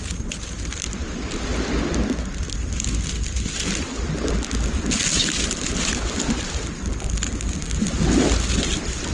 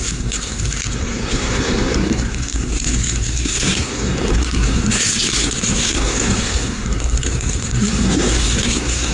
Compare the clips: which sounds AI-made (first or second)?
second